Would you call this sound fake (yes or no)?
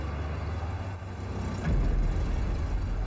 no